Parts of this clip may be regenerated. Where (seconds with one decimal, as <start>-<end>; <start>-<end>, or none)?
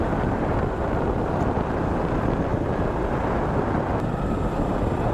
none